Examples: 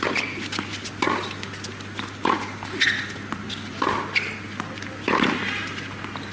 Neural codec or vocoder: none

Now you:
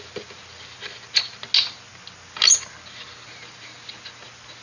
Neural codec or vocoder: none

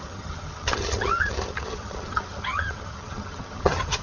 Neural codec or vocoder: vocoder, HiFi-GAN